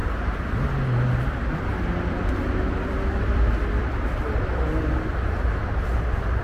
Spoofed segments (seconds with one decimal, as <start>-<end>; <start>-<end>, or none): none